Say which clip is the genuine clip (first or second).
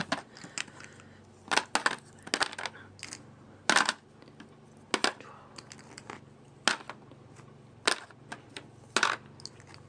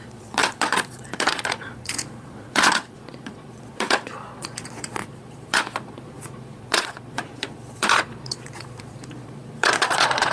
first